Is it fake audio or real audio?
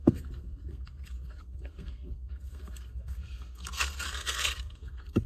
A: fake